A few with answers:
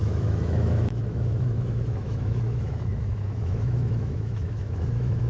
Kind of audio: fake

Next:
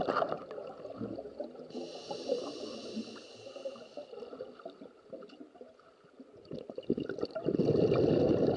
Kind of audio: real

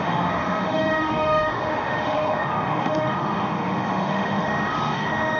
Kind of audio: fake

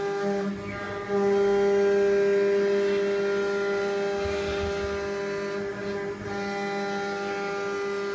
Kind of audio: real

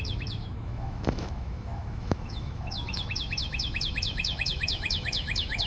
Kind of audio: fake